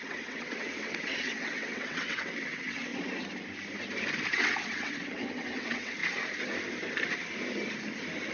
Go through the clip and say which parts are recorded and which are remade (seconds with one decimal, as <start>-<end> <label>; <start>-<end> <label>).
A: 0.0-2.9 remade; 2.9-4.3 recorded; 4.3-6.0 remade; 6.0-8.3 recorded